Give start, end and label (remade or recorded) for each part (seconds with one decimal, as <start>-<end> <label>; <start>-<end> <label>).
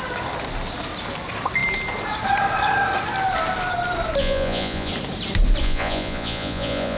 0.0-4.2 recorded; 4.2-4.9 remade; 4.9-5.6 recorded; 5.6-7.0 remade